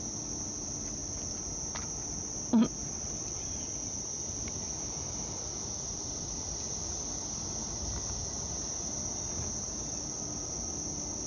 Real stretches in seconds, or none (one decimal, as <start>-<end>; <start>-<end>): 0.0-11.3